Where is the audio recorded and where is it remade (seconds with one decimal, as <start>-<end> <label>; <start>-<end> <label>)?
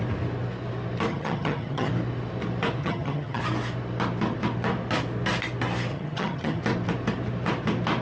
0.0-1.1 recorded; 1.1-1.9 remade; 1.9-2.8 recorded; 2.8-3.4 remade; 3.4-5.9 recorded; 5.9-6.6 remade; 6.6-8.0 recorded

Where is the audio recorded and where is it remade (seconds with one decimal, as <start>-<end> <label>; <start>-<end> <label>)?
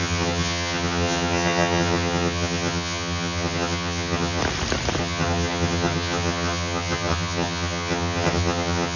0.0-4.4 remade; 4.4-5.0 recorded; 5.0-9.0 remade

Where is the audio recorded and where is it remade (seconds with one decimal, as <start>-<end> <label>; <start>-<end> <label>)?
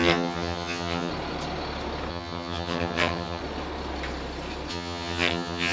0.0-1.1 remade; 1.1-2.1 recorded; 2.1-3.4 remade; 3.4-4.7 recorded; 4.7-5.7 remade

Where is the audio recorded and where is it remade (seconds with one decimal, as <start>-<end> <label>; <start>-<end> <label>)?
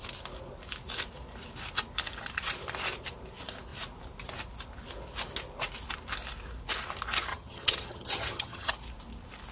0.0-7.3 recorded; 7.3-8.7 remade; 8.7-9.5 recorded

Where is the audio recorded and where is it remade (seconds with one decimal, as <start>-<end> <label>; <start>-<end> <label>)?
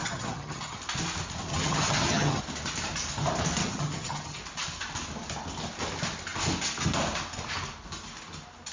0.0-0.8 remade; 0.8-1.5 recorded; 1.5-2.4 remade; 2.4-3.6 recorded; 3.6-4.4 remade; 4.4-8.7 recorded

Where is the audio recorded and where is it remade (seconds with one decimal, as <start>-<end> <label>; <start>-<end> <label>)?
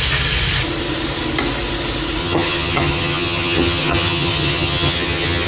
0.0-2.2 recorded; 2.2-5.5 remade